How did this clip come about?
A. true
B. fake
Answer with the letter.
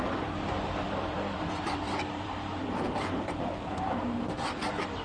B